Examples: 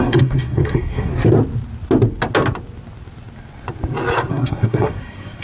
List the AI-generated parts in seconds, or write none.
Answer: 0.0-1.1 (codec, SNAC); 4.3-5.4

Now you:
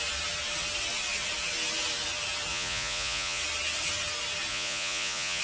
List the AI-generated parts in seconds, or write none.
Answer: 2.5-3.4 (vocoder, Vocos); 4.5-5.4

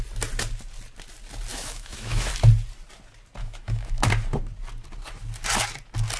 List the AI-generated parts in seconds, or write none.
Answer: 1.5-2.3 (autoencoder, DAC-VAE); 3.4-4.1